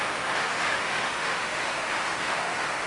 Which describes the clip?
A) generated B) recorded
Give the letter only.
A